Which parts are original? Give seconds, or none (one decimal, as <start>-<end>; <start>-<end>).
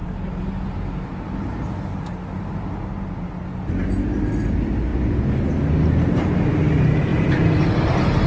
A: 0.0-4.9; 5.4-7.1; 7.7-8.3